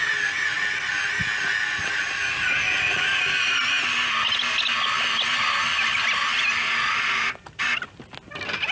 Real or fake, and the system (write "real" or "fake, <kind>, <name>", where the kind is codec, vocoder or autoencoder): real